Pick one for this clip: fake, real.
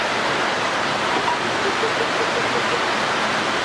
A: real